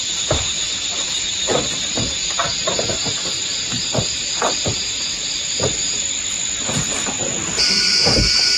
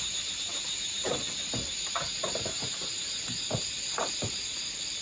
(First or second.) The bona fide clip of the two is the second